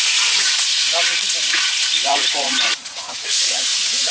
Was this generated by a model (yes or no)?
yes